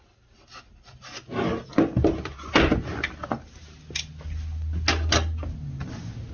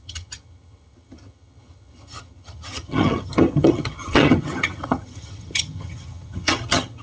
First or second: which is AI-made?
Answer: second